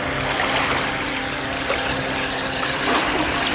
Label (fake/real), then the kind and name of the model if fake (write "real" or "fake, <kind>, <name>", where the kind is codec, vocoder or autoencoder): real